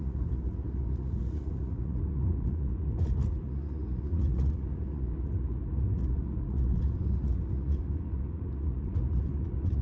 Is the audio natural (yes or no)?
no